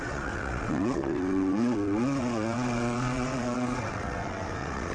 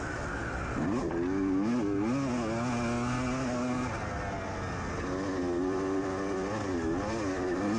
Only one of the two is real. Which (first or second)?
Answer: second